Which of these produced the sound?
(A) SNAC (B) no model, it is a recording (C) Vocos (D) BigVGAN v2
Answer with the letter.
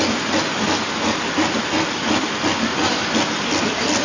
B